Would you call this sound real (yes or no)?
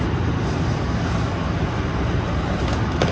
yes